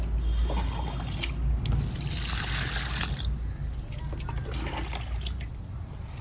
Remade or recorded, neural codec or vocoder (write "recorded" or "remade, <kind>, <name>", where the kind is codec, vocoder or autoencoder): recorded